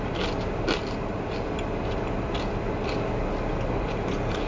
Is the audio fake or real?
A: real